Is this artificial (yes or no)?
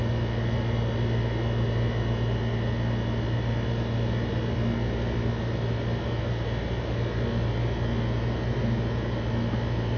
no